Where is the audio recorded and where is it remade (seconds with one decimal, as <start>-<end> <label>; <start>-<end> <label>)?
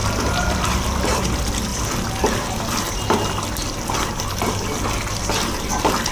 0.0-6.1 recorded